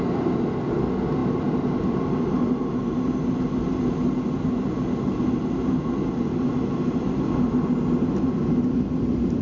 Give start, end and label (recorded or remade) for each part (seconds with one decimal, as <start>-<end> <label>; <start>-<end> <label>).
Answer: 0.0-9.4 recorded